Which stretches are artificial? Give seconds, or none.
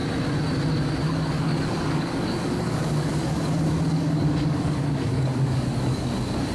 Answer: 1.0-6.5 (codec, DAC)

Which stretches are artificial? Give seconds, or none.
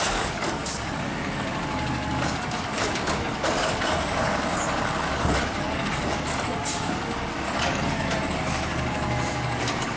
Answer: 0.0-10.0 (codec, DAC)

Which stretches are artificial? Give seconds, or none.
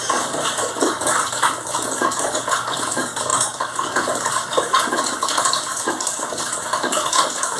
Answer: 0.0-7.6 (codec, DAC)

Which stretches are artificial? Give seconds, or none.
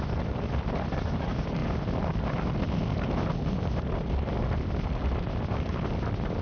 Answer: none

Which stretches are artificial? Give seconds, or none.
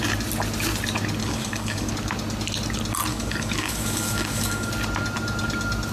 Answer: 1.2-1.9 (codec, DAC); 3.1-4.7